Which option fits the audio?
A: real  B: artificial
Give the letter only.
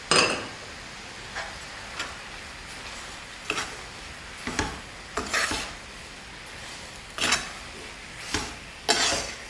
A